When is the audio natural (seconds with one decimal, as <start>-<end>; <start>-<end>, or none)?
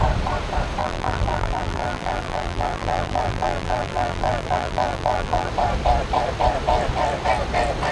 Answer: 0.0-0.8; 5.5-7.9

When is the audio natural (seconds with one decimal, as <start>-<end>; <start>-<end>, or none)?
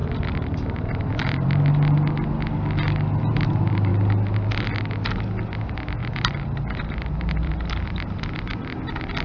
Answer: 1.6-6.0; 8.2-9.2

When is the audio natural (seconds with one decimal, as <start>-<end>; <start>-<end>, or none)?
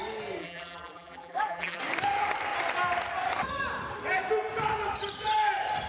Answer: 0.0-0.4; 1.8-5.9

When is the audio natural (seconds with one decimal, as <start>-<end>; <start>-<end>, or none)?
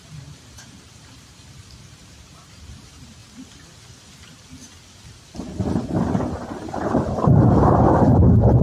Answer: 3.2-6.8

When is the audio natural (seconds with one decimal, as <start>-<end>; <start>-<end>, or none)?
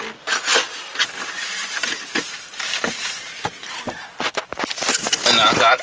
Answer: 0.0-5.8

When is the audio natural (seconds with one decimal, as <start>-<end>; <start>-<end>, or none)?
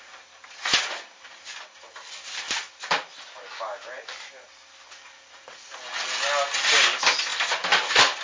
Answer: 0.0-8.2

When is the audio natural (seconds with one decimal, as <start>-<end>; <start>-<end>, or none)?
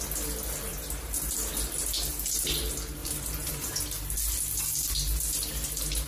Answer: 0.0-0.7; 1.3-3.0; 3.8-6.1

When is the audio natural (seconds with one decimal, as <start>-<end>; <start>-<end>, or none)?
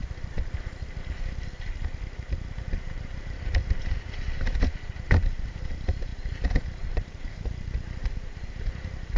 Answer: 0.0-2.3